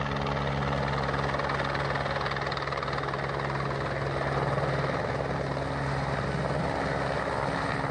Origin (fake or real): real